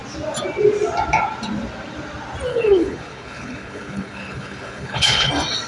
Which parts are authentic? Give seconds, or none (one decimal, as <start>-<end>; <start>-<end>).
0.0-2.5; 5.3-5.7